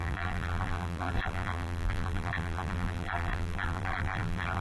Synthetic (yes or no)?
yes